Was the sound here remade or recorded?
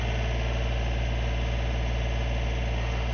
recorded